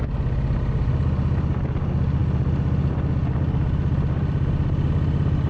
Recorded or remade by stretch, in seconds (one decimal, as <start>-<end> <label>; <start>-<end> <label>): 0.0-5.5 recorded